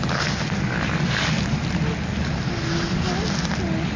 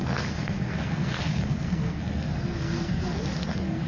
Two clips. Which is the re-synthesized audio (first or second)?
second